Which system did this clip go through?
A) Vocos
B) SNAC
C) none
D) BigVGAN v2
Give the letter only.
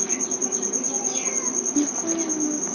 C